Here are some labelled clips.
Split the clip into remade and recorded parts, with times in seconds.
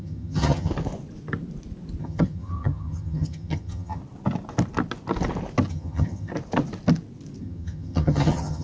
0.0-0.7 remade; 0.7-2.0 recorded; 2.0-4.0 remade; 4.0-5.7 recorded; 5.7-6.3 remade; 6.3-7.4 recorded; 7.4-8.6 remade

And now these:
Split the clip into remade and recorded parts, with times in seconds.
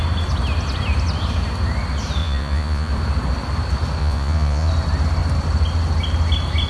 0.0-2.2 recorded; 2.2-2.9 remade; 2.9-4.0 recorded; 4.0-4.7 remade; 4.7-6.7 recorded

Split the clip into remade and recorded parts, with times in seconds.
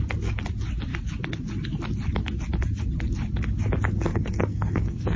0.0-4.1 recorded; 4.1-5.2 remade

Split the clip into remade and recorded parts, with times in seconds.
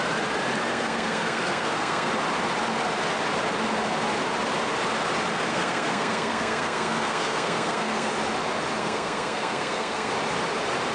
0.0-0.7 recorded; 0.7-2.1 remade; 2.1-5.5 recorded; 5.5-8.1 remade; 8.1-8.8 recorded; 8.8-10.1 remade; 10.1-10.9 recorded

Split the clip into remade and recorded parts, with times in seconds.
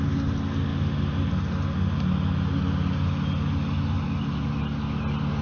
0.0-5.4 recorded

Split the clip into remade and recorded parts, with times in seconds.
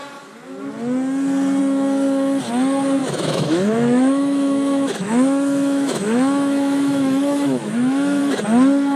0.0-3.0 recorded; 3.0-8.2 remade; 8.2-9.0 recorded